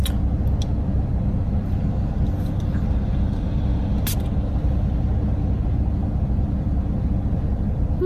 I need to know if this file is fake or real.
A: real